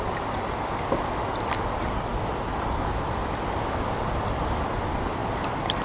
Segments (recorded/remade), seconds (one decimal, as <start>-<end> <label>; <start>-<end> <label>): 0.0-5.8 recorded